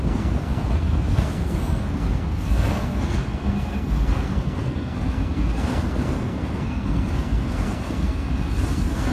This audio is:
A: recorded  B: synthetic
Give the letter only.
B